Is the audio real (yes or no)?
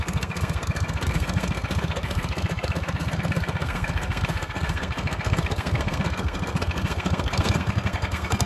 no